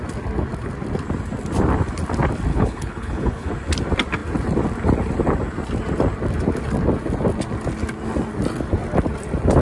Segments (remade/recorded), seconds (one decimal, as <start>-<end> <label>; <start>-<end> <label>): 0.0-2.5 recorded; 2.5-3.5 remade; 3.5-9.6 recorded